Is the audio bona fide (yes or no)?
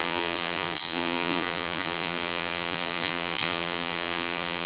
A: no